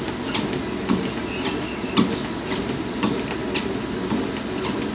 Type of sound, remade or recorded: recorded